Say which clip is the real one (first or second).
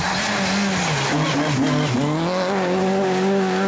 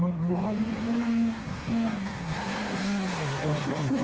first